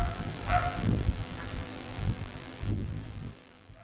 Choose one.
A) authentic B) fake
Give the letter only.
B